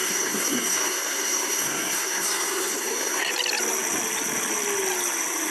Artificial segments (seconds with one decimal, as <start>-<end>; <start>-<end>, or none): 0.0-3.3